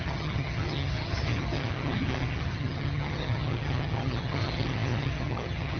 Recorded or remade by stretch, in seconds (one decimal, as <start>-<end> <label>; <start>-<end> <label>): 0.0-5.8 remade